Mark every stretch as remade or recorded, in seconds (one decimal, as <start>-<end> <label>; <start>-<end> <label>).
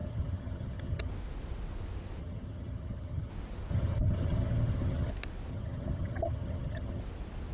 0.0-1.1 remade; 1.1-2.2 recorded; 2.2-3.3 remade; 3.3-3.7 recorded; 3.7-5.1 remade; 5.1-5.5 recorded; 5.5-7.0 remade; 7.0-7.5 recorded